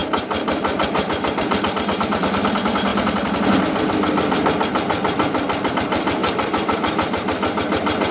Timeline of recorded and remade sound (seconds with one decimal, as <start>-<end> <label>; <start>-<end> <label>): 0.0-2.9 remade; 2.9-5.7 recorded; 5.7-8.1 remade